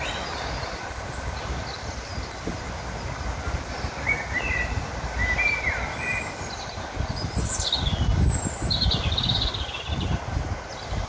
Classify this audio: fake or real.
real